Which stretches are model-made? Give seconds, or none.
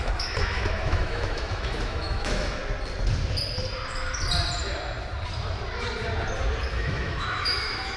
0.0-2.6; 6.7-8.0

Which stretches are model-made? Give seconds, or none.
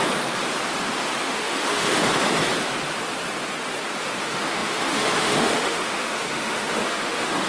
1.2-2.0; 4.0-7.5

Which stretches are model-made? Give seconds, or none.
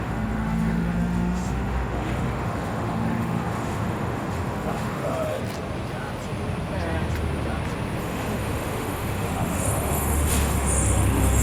0.0-5.4; 8.0-11.4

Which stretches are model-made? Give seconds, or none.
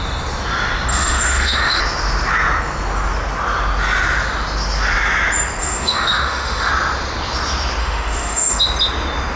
0.9-1.8; 5.6-6.7; 7.8-8.6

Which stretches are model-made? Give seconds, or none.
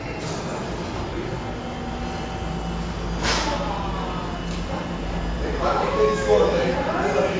5.6-6.9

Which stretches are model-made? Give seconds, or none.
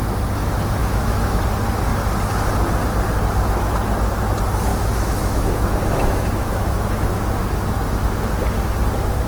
0.8-1.4; 4.7-7.2